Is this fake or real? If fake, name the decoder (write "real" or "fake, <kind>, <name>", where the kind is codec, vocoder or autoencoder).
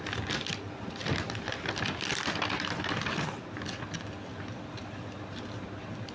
real